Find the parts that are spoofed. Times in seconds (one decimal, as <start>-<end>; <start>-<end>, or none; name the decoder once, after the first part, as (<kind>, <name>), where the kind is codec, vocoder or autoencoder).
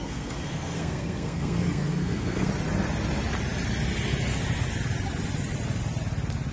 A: 0.0-2.5 (codec, SNAC)